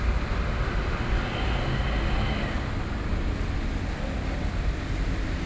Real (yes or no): yes